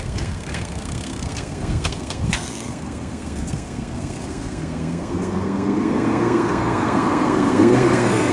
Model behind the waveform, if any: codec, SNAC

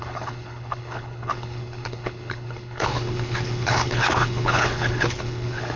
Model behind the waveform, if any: codec, HILCodec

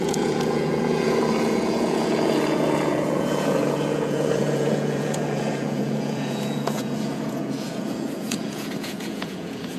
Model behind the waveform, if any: vocoder, Vocos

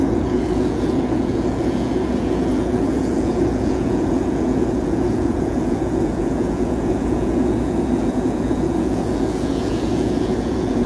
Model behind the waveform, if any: vocoder, Vocos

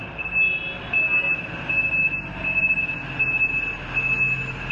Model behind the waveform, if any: none